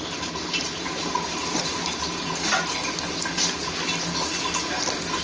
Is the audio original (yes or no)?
yes